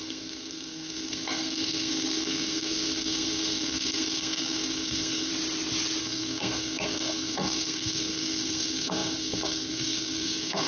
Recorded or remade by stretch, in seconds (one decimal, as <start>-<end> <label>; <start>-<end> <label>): 0.0-5.3 remade; 5.3-6.0 recorded; 6.0-10.7 remade